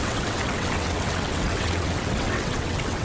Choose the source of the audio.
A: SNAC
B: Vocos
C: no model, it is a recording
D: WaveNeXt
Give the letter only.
D